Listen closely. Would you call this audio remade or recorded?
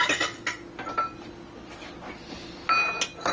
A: recorded